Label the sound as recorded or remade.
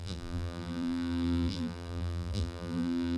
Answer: remade